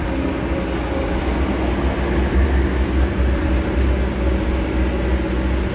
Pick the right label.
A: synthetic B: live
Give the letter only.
B